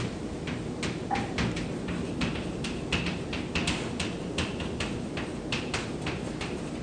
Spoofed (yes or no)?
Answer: no